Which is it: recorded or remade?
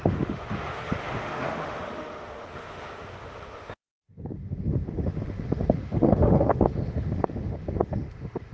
remade